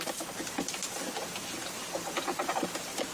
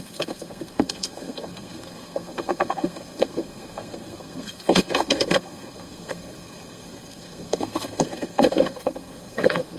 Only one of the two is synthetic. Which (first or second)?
second